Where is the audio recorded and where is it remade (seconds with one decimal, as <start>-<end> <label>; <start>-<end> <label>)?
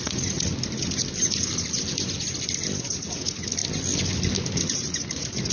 0.0-0.5 remade; 0.5-2.9 recorded; 2.9-3.6 remade; 3.6-4.5 recorded; 4.5-5.5 remade